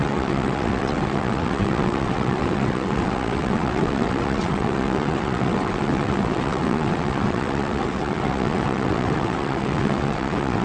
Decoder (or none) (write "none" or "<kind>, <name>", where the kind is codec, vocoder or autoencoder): vocoder, WaveNeXt